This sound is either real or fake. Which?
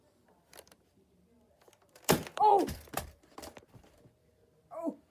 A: fake